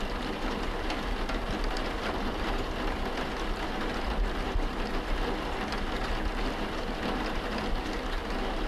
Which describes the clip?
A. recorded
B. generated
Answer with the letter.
A